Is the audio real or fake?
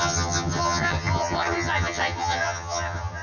fake